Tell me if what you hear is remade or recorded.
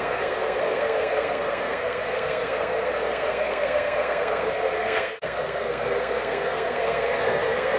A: remade